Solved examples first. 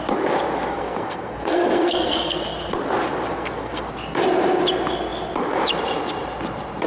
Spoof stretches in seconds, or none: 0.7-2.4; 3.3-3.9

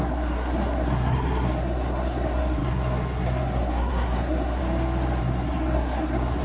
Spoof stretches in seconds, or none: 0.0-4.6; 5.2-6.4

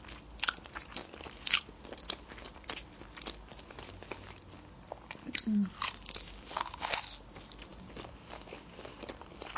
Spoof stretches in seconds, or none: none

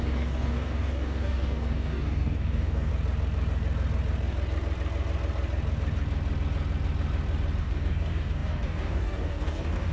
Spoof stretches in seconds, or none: 0.0-2.9; 7.6-9.9